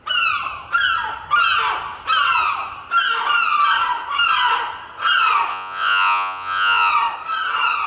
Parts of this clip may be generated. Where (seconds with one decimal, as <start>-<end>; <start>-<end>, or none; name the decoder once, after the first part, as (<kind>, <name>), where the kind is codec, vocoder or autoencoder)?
5.5-6.9 (vocoder, Vocos)